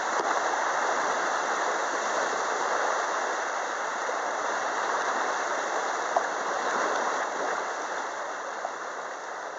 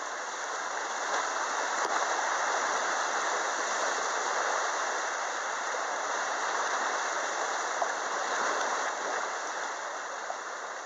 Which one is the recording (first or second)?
second